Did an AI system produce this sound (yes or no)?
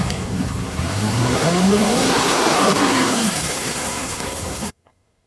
yes